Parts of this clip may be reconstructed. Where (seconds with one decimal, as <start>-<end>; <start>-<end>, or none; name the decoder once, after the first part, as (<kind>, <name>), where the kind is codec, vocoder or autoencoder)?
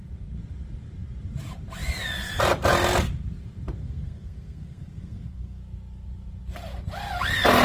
3.8-5.6 (codec, SNAC)